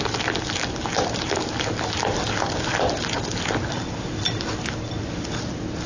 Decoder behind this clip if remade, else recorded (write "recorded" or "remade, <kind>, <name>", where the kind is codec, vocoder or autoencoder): recorded